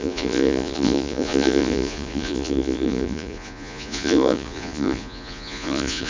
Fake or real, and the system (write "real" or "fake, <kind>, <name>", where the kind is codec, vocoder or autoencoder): fake, vocoder, Vocos